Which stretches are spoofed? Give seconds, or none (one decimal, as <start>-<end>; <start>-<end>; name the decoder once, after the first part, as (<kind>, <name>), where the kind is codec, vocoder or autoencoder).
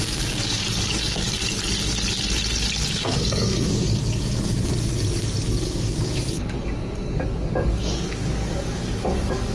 0.0-1.4 (codec, DAC); 2.9-4.7; 5.6-9.5